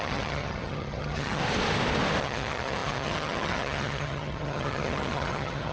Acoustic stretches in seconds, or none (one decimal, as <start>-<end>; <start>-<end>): 1.4-2.2